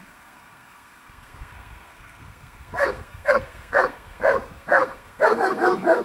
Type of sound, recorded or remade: remade